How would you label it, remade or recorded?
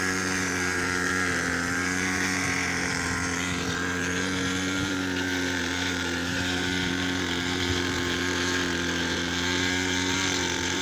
remade